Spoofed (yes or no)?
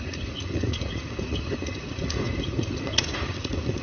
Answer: yes